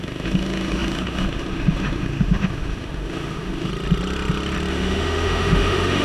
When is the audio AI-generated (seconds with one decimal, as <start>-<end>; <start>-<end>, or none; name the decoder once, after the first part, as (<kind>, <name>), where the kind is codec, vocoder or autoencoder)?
0.0-3.7 (autoencoder, DAC-VAE); 4.7-6.0